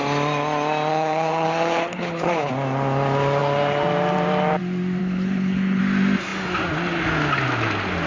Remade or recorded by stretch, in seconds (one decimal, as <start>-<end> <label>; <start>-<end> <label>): 0.0-0.9 recorded; 0.9-2.5 remade; 2.5-5.0 recorded; 5.0-5.8 remade; 5.8-8.1 recorded